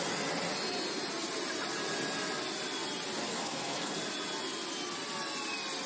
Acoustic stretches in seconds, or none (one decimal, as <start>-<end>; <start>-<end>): 0.0-3.3; 4.0-5.9